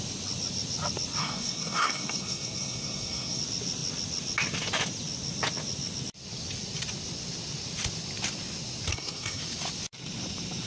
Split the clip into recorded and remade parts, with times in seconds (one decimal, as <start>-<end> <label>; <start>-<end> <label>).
0.0-1.2 recorded; 1.2-3.4 remade; 3.4-8.9 recorded; 8.9-9.4 remade; 9.4-10.7 recorded